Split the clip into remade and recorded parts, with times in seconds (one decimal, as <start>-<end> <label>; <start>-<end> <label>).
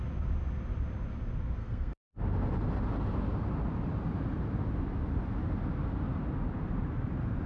0.0-1.6 recorded; 1.6-2.2 remade; 2.2-7.5 recorded